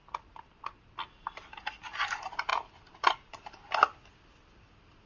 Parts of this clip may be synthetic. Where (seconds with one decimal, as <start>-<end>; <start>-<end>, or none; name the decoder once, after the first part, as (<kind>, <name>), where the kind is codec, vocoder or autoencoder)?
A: none